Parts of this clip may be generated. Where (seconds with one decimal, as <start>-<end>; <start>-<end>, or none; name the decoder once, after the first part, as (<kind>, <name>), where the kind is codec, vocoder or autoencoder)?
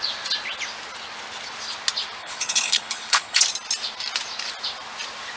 2.2-3.4 (codec, HILCodec)